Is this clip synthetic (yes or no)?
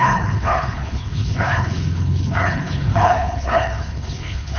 yes